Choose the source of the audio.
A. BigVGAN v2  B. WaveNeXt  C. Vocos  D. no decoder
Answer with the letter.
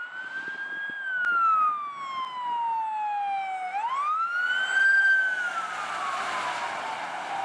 D